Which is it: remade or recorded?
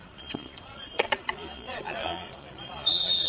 remade